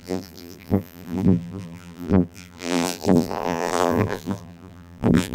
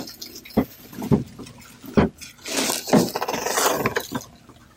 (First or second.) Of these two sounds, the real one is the second